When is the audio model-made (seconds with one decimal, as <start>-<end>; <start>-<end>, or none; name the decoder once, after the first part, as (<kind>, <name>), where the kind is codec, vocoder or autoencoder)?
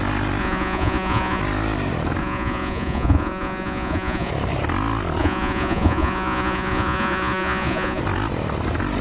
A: 0.4-1.4 (vocoder, Vocos); 2.2-4.3; 5.2-8.0